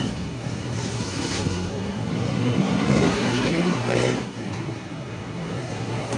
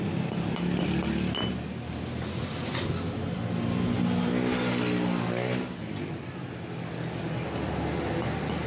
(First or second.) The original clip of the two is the second